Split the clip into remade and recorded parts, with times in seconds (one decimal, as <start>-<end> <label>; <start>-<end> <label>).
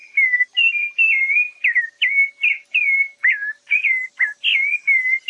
0.0-5.3 recorded